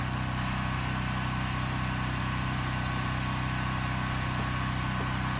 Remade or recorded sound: recorded